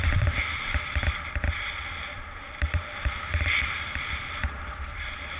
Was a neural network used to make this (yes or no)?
yes